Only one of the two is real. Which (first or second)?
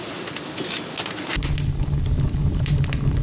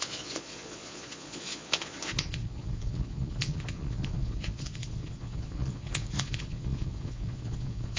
first